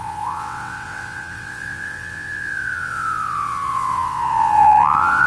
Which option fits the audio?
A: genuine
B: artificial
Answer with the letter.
B